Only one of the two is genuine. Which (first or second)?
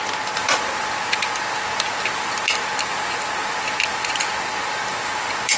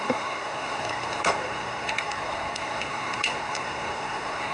first